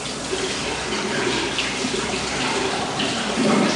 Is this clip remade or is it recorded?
recorded